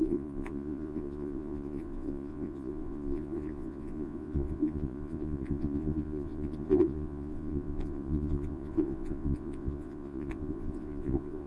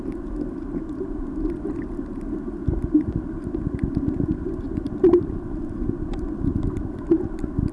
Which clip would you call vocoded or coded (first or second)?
first